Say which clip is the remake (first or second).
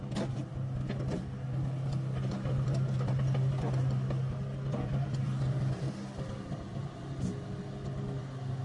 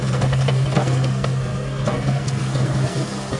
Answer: second